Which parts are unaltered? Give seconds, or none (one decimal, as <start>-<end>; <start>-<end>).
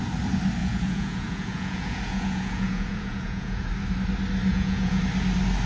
0.0-0.6; 3.7-4.5; 5.0-5.7